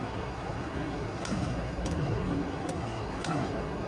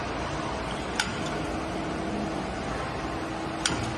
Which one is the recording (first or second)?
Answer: second